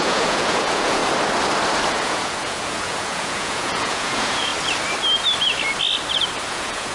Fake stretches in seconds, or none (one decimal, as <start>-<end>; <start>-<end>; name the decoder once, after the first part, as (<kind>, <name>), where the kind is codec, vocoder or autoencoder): 0.0-1.0 (vocoder, Vocos); 1.9-4.5; 6.5-6.9